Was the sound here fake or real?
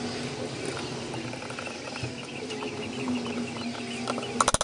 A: real